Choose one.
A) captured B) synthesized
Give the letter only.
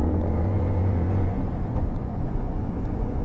B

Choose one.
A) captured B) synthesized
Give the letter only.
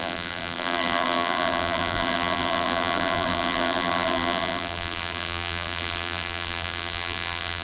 B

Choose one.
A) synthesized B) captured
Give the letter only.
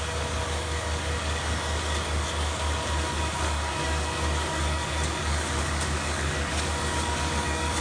A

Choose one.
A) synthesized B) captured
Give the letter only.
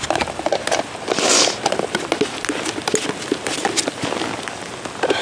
B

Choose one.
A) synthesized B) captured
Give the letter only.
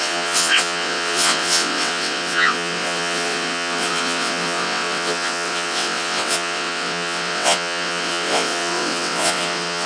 A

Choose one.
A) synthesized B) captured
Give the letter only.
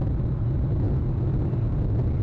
B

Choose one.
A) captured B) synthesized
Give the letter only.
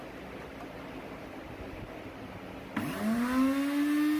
A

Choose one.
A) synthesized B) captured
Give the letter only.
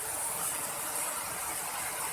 B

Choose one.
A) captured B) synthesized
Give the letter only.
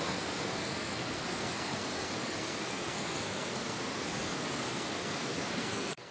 B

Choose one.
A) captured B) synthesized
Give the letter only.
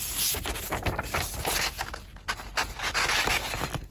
A